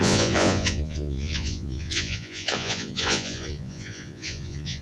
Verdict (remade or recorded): remade